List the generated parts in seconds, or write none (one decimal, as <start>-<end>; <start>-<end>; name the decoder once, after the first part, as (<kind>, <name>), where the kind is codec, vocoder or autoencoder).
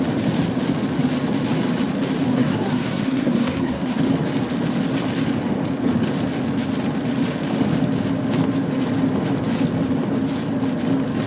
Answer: 2.3-4.0 (codec, SNAC)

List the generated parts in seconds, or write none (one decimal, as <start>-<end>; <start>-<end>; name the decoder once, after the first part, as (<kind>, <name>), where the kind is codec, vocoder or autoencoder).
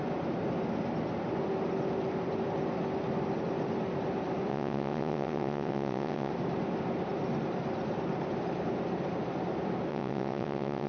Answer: 4.5-6.3 (vocoder, WaveNeXt); 9.9-10.9